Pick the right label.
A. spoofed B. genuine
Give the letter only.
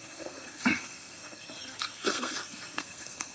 A